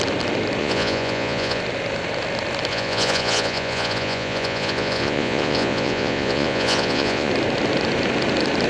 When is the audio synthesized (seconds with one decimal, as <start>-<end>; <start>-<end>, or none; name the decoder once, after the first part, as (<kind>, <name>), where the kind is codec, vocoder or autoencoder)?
0.6-1.6 (vocoder, Vocos); 2.7-7.3